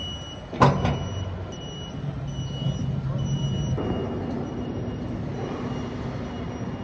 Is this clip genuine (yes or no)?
yes